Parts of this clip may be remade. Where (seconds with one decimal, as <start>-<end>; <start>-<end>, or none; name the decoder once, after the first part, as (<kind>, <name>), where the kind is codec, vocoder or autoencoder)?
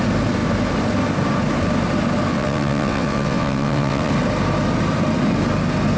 2.3-4.1 (vocoder, WaveNeXt)